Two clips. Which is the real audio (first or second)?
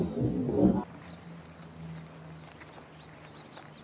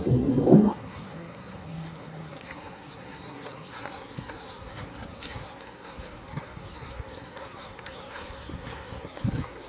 first